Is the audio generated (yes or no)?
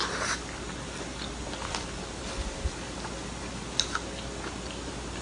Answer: no